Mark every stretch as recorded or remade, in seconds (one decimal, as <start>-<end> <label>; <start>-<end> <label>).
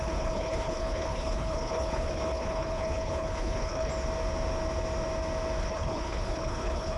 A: 0.0-3.9 remade; 3.9-5.6 recorded; 5.6-7.0 remade